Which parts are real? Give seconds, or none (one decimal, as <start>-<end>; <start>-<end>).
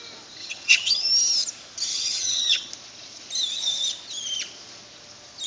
0.0-0.4; 1.1-1.9; 2.7-5.5